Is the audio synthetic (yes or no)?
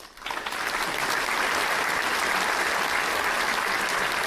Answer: no